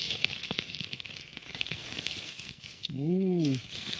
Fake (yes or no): yes